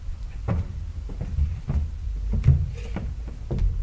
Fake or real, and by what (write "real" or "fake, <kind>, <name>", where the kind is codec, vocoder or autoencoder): fake, vocoder, BigVGAN v2